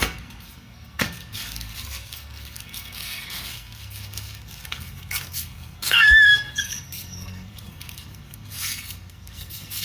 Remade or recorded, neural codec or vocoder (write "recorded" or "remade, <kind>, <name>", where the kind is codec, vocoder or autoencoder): remade, codec, SNAC